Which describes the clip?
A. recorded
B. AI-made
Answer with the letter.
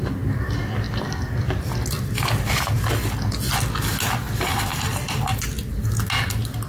A